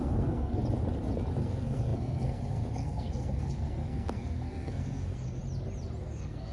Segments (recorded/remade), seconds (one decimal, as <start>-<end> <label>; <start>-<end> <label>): 0.0-0.6 remade; 0.6-1.4 recorded; 1.4-5.4 remade; 5.4-6.0 recorded; 6.0-6.5 remade